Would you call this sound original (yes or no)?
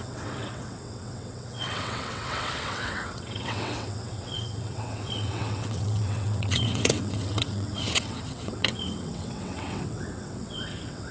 no